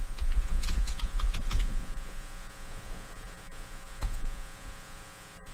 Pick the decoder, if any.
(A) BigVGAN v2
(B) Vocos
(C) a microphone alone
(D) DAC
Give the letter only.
B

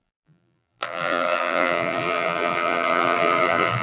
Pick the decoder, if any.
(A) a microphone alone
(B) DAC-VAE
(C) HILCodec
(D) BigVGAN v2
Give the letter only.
D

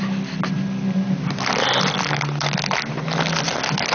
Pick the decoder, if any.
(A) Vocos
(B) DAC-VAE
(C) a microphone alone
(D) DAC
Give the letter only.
C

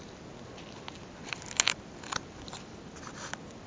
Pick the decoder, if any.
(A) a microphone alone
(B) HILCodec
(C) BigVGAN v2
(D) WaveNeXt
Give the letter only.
A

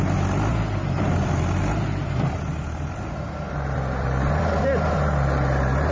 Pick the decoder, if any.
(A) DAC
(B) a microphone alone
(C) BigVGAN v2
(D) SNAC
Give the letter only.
B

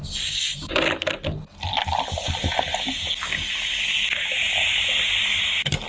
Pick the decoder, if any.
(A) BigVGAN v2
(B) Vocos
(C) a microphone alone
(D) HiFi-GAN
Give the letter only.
C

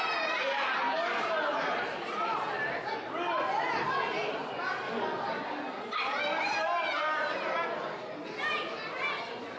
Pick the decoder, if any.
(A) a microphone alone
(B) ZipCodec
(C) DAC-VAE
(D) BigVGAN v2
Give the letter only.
A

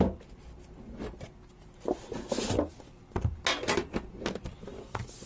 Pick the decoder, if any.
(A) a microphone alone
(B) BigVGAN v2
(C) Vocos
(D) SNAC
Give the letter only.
A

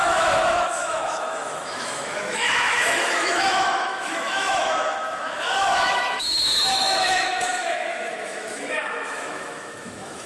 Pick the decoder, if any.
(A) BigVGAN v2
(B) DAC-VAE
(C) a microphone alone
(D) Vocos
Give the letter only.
B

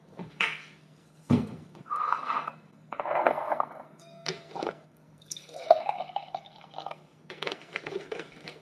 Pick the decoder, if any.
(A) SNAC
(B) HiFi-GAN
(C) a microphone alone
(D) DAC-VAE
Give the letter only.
A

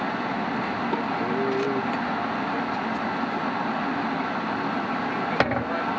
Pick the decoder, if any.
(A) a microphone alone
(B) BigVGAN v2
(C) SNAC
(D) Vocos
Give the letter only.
A